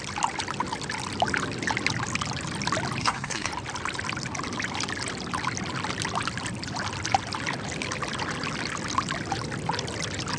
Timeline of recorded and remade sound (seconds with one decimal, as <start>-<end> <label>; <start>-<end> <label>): 0.0-3.0 recorded; 3.0-3.5 remade; 3.5-10.4 recorded